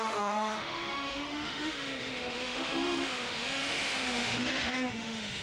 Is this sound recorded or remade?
remade